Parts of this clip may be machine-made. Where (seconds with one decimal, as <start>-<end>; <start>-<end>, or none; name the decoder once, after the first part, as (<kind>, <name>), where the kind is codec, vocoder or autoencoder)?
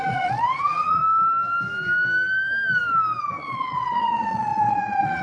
0.0-1.0 (vocoder, Vocos); 3.2-5.2